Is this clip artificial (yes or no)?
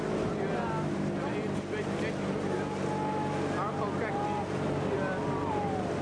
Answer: no